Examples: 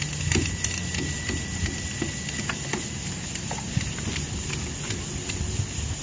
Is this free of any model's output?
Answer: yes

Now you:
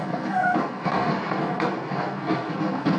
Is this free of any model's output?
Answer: no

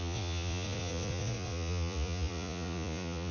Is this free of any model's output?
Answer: no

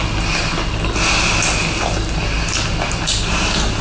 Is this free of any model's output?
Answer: yes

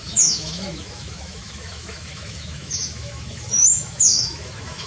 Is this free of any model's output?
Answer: no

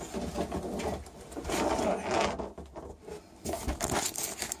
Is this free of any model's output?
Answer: yes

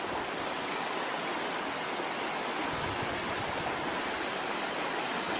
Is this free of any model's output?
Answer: yes